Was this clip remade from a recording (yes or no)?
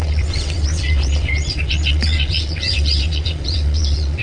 yes